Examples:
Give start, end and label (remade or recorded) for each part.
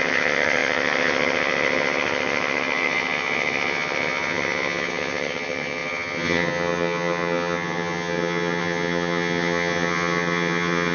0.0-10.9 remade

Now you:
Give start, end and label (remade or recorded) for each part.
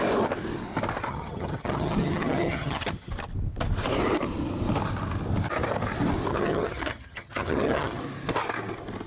0.0-1.1 recorded; 1.1-3.1 remade; 3.1-6.3 recorded; 6.3-8.0 remade; 8.0-9.1 recorded